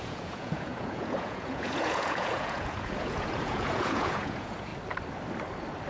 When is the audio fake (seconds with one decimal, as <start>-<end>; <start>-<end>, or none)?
0.0-4.7